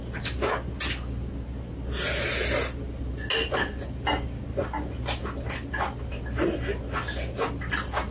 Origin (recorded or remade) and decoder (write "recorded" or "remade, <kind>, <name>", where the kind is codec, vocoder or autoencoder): recorded